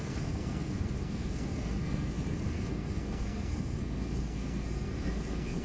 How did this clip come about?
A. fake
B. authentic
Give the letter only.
A